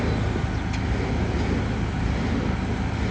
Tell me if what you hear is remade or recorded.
recorded